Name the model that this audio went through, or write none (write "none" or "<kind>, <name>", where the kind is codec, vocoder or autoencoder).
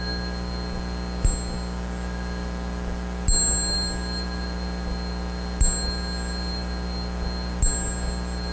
none